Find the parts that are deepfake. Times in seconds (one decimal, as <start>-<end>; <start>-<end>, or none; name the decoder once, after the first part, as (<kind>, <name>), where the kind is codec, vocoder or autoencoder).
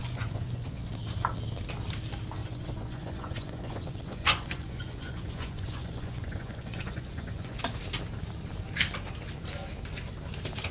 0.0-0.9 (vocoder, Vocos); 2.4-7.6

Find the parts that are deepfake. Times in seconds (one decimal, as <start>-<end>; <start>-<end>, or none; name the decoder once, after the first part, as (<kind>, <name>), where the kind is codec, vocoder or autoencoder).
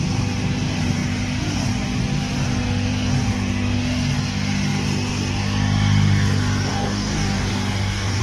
6.7-8.2 (codec, DAC)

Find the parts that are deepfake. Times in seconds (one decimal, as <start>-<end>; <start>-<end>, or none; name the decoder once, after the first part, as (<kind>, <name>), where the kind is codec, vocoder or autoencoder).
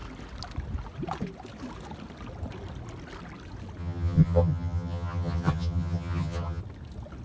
3.8-6.6 (vocoder, HiFi-GAN)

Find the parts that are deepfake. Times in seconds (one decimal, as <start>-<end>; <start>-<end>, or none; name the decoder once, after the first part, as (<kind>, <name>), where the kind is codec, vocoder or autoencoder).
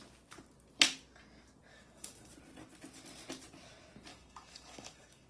1.7-2.3 (autoencoder, DAC-VAE); 4.1-5.3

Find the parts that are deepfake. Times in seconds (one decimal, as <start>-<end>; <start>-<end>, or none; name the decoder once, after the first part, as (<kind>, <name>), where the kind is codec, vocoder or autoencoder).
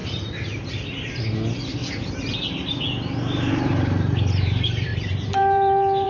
0.7-1.8 (vocoder, BigVGAN v2); 3.5-6.1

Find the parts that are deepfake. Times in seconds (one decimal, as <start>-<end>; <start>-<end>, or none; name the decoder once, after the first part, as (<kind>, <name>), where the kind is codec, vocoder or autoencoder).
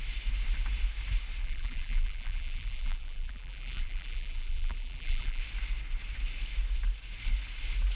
1.4-5.4 (vocoder, BigVGAN v2)